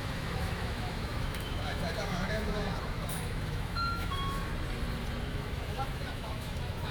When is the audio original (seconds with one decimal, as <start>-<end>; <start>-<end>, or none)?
4.5-5.3